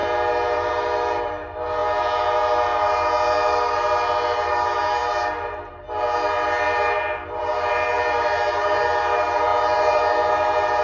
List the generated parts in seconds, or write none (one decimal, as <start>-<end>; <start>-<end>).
none